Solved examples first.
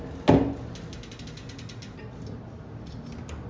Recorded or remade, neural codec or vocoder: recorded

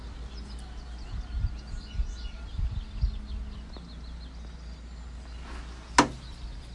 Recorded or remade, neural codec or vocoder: recorded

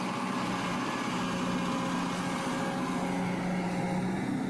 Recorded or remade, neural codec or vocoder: recorded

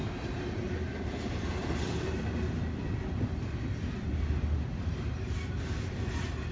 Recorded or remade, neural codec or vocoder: recorded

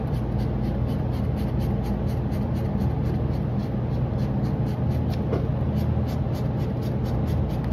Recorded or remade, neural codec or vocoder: recorded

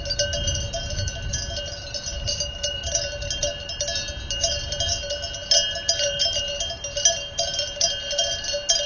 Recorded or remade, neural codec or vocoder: recorded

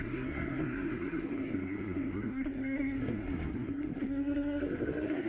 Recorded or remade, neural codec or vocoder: remade, codec, SNAC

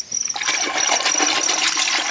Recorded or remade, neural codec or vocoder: recorded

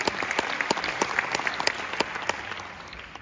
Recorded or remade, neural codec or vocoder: recorded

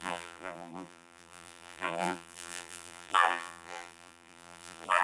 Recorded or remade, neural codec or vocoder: remade, vocoder, BigVGAN v2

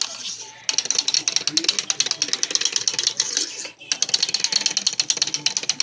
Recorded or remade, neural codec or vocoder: recorded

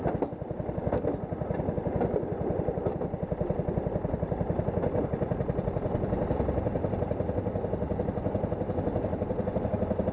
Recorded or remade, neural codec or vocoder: recorded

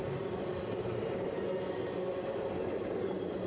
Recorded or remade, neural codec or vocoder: recorded